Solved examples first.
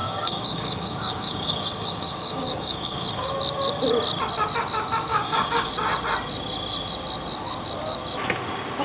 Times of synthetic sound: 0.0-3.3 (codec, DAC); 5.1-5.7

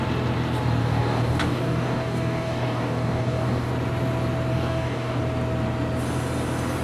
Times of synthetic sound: 0.8-3.7 (codec, DAC); 4.5-5.2

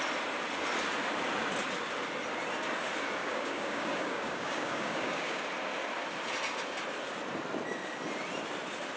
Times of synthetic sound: 3.2-5.4 (codec, DAC)

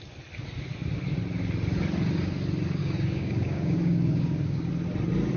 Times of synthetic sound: 2.8-4.7 (codec, DAC)